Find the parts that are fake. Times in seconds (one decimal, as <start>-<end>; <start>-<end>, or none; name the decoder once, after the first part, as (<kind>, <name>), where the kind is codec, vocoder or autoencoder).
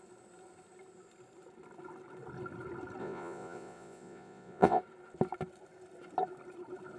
3.0-4.8 (vocoder, Vocos)